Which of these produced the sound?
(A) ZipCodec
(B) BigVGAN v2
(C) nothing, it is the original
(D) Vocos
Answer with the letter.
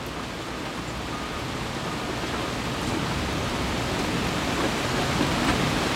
C